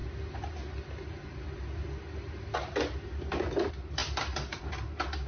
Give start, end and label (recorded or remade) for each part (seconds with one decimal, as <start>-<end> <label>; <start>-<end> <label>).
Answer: 0.0-5.3 recorded